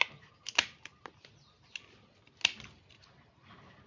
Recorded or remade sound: recorded